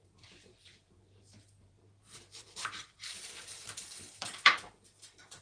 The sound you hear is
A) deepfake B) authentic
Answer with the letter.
A